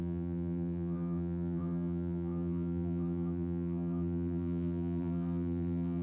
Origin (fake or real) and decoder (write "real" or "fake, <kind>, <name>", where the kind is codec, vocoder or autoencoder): fake, vocoder, BigVGAN v2